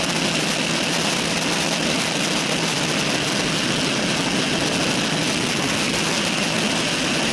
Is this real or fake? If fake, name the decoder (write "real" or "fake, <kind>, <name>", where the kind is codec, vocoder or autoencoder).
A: real